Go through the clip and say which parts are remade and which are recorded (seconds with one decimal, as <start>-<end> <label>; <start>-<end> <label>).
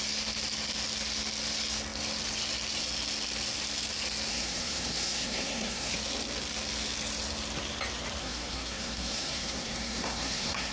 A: 0.0-4.3 recorded; 4.3-5.9 remade; 5.9-8.2 recorded; 8.2-10.7 remade